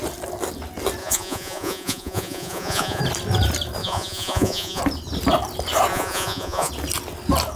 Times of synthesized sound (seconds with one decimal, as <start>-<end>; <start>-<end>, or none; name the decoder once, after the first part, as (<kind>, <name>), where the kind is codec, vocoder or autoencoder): 1.0-3.0 (vocoder, Vocos); 3.8-4.8; 5.9-6.7